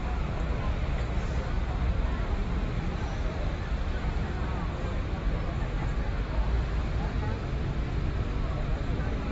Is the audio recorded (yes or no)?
yes